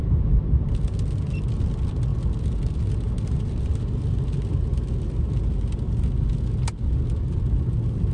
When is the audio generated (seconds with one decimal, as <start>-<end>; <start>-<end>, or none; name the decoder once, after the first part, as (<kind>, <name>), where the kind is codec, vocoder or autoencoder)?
none

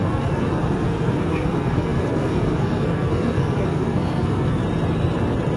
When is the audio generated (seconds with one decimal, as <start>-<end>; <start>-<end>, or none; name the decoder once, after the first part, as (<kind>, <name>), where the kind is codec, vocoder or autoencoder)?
0.0-4.6 (codec, SNAC)

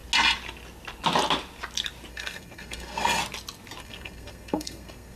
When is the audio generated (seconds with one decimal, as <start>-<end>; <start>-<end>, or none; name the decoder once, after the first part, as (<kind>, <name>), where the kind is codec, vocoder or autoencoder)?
2.1-3.2 (codec, SNAC); 3.8-5.2

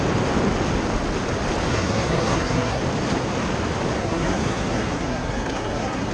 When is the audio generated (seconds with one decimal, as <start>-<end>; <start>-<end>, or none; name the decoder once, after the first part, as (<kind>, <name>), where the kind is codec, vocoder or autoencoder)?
1.7-2.8 (codec, SNAC); 4.0-6.1

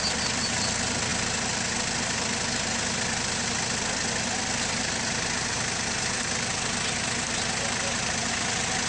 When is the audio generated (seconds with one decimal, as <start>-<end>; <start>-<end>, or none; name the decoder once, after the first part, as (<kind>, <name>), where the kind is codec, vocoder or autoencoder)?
none

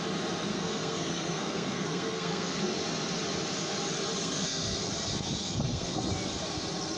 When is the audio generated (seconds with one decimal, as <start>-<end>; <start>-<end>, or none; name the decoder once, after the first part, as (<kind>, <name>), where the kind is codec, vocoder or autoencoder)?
0.5-2.6 (codec, SNAC); 4.2-4.9; 5.4-6.0

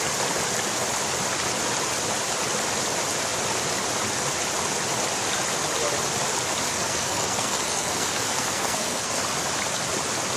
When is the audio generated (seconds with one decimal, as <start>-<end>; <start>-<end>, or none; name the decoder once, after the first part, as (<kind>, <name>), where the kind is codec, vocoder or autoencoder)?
6.7-9.2 (codec, SNAC)

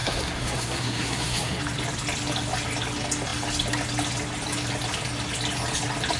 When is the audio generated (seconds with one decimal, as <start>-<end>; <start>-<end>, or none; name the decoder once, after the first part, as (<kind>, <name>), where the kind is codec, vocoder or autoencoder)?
0.0-1.6 (codec, SNAC)